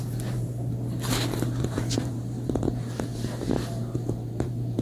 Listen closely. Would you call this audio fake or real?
fake